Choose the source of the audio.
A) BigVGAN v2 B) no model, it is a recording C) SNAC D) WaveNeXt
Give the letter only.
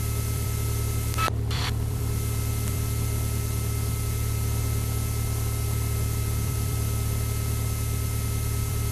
A